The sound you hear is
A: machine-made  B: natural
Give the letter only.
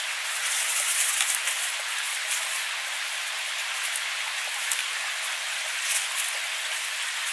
B